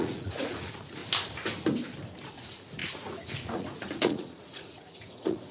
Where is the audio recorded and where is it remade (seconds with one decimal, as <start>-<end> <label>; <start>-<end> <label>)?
0.0-1.0 remade; 1.0-2.3 recorded; 2.3-5.5 remade